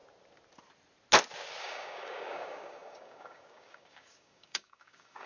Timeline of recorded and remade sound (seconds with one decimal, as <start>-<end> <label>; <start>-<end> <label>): 0.0-1.6 recorded; 1.6-5.3 remade